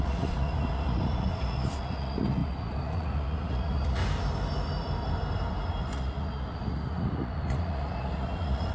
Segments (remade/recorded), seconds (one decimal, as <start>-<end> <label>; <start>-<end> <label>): 0.0-4.0 remade; 4.0-5.8 recorded; 5.8-8.7 remade